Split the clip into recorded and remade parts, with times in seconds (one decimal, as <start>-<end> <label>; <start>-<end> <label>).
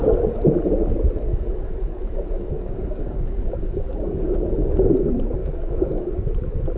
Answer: 0.0-1.3 recorded; 1.3-4.8 remade; 4.8-5.4 recorded; 5.4-6.1 remade; 6.1-6.8 recorded